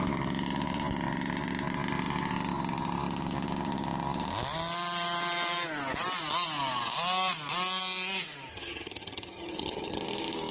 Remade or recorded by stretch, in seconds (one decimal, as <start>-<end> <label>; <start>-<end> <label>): 0.0-8.5 recorded; 8.5-10.0 remade; 10.0-10.5 recorded